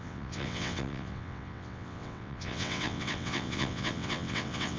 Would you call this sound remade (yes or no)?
yes